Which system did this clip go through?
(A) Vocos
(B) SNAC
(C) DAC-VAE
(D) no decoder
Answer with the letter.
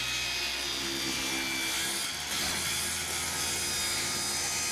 D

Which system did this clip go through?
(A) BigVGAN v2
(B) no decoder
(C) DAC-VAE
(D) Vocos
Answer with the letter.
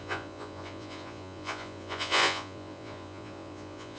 D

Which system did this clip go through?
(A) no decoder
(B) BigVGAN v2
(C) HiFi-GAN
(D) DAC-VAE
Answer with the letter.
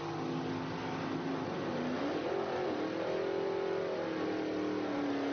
A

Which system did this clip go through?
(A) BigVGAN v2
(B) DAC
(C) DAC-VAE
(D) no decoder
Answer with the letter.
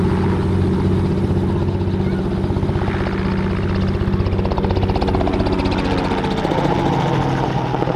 D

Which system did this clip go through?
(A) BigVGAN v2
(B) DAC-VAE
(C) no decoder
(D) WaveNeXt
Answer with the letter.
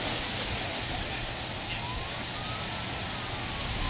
C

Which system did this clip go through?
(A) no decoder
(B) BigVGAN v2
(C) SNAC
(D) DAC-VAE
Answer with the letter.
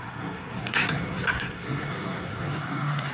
C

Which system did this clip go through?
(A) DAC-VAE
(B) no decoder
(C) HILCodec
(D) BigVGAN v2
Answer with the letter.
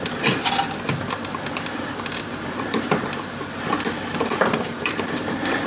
D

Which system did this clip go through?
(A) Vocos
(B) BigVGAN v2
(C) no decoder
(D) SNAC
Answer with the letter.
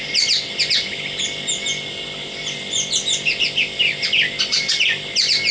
C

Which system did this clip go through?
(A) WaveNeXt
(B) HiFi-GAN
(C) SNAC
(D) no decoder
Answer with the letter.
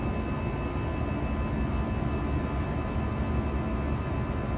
D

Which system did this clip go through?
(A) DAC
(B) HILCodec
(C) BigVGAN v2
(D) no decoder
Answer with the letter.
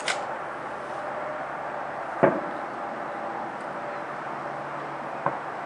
D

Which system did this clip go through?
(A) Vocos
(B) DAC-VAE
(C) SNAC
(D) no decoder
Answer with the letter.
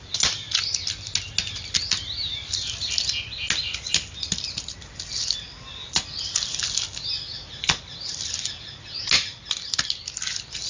D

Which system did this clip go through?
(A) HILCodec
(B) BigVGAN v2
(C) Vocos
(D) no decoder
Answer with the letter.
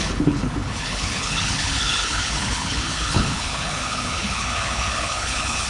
A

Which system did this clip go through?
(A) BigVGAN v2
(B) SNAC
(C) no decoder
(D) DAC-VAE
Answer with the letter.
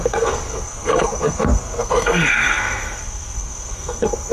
B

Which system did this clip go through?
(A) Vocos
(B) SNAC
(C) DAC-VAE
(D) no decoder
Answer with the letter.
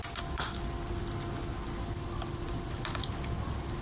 D